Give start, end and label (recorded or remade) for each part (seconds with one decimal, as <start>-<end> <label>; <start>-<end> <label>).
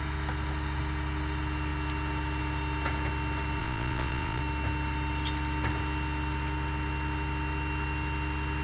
0.0-3.6 recorded; 3.6-4.4 remade; 4.4-8.6 recorded